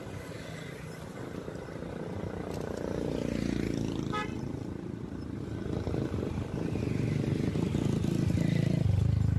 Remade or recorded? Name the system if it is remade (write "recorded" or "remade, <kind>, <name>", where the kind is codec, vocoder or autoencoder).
recorded